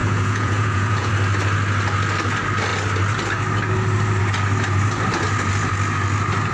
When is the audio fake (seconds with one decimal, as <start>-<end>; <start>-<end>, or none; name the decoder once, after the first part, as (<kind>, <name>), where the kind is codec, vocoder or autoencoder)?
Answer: 0.0-1.1 (vocoder, Vocos)